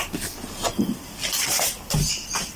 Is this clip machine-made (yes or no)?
no